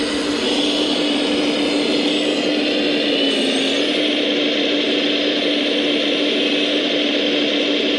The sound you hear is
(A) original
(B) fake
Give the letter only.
A